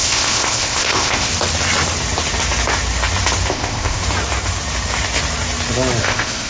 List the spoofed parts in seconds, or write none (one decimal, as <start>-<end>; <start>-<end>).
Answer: 0.0-1.3; 3.5-4.0; 6.0-6.5